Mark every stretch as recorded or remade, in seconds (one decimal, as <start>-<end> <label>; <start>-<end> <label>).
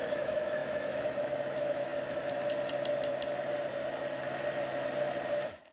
0.0-1.9 remade; 1.9-5.3 recorded; 5.3-5.7 remade